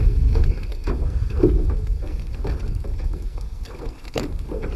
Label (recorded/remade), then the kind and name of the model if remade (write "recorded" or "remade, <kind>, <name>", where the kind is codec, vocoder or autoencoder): remade, codec, SNAC